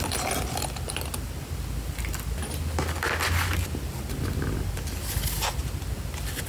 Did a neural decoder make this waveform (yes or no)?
no